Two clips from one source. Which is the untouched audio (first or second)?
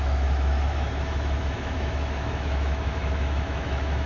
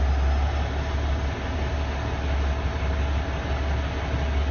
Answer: second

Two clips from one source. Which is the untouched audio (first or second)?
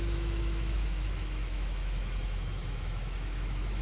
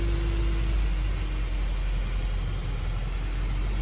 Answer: second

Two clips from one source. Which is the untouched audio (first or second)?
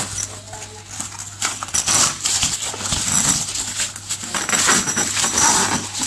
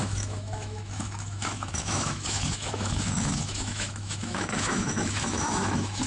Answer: first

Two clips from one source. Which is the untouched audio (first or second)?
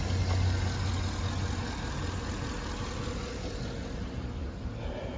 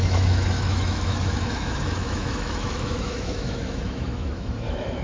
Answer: first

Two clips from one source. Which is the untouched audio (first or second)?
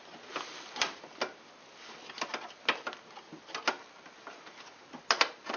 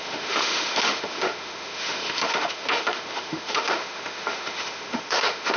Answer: first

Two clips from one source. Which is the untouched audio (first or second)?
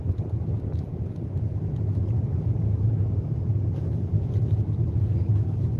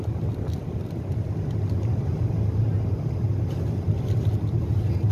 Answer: second